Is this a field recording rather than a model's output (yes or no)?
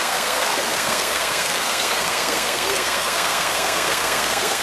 no